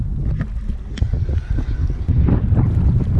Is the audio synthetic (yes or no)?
no